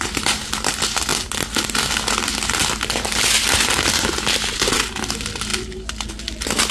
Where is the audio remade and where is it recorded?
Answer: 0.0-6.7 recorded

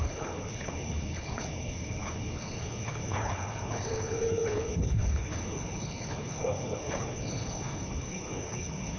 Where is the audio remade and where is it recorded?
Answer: 0.0-9.0 remade

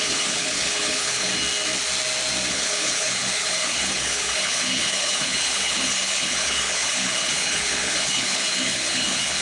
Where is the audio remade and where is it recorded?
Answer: 0.0-1.3 remade; 1.3-2.5 recorded; 2.5-9.4 remade